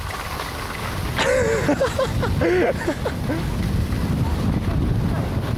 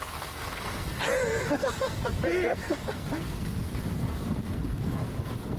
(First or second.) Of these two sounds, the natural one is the first